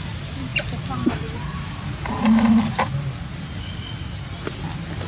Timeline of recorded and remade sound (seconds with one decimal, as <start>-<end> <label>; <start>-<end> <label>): 0.0-5.1 recorded